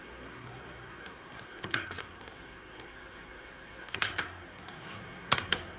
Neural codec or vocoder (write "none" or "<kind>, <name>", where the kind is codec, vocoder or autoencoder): codec, SNAC